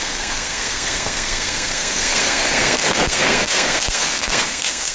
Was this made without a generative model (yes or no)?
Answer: no